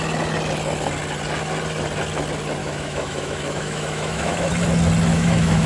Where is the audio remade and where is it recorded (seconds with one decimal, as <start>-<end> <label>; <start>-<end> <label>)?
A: 0.0-2.6 recorded; 2.6-4.5 remade; 4.5-5.1 recorded; 5.1-5.7 remade